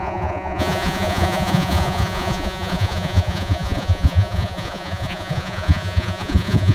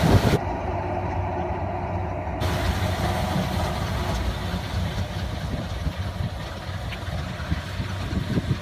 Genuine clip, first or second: second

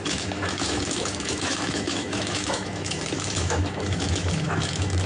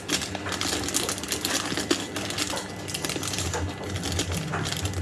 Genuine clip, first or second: second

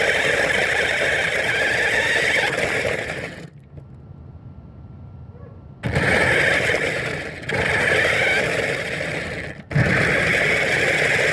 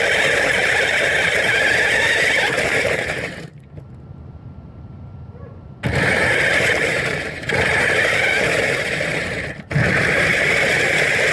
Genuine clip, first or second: first